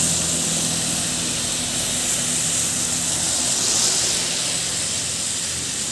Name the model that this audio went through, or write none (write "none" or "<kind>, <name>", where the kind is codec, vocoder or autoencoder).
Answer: none